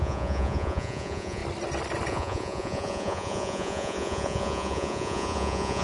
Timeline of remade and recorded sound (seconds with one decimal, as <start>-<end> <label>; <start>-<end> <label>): 0.0-1.4 remade; 1.4-2.1 recorded; 2.1-5.8 remade